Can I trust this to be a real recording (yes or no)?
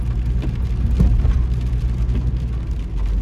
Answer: yes